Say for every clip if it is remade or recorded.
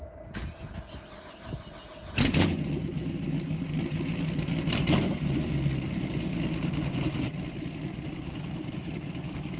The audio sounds recorded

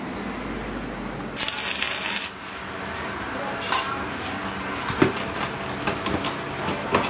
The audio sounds recorded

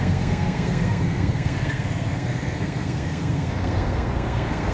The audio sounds remade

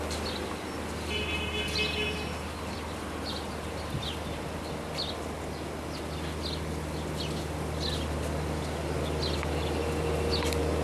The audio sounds recorded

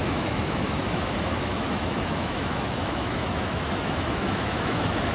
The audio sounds remade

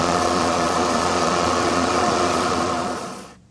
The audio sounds remade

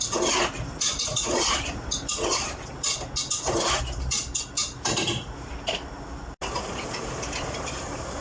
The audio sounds recorded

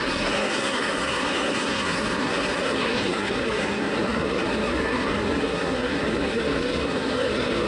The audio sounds remade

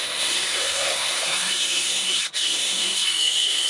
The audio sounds remade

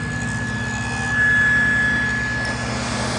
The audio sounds recorded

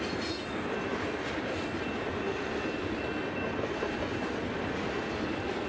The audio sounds recorded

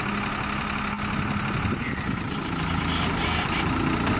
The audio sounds recorded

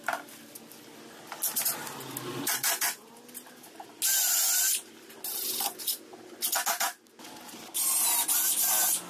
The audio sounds recorded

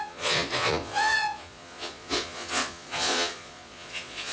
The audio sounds remade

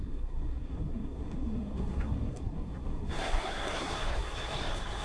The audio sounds remade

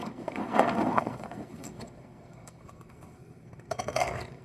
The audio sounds remade